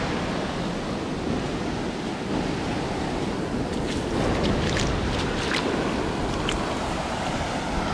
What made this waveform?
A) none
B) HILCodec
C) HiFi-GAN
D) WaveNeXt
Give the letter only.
A